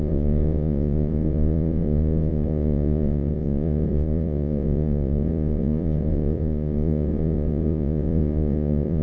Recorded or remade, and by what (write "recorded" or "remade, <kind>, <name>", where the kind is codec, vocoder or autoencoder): remade, vocoder, Vocos